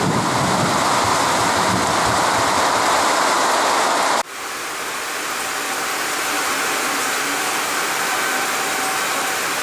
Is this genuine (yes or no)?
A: yes